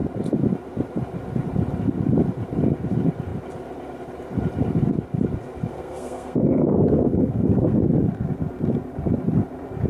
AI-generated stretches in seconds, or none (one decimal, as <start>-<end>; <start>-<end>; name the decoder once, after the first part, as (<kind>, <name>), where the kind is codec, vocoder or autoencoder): 5.7-7.8 (codec, SNAC)